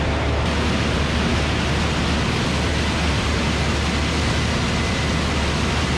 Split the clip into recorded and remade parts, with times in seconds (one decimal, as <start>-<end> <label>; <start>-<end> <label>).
0.0-6.0 recorded